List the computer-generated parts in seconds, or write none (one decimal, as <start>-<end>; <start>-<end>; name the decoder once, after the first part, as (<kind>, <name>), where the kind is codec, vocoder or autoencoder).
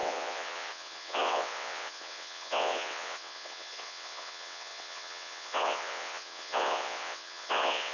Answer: 0.0-7.9 (vocoder, WaveNeXt)